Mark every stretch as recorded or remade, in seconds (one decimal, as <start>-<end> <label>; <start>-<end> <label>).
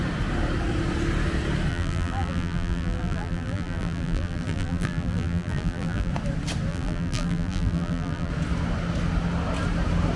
0.0-1.7 recorded; 1.7-6.1 remade; 6.1-6.7 recorded; 6.7-8.3 remade; 8.3-10.2 recorded